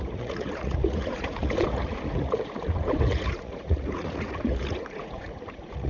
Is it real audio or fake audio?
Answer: fake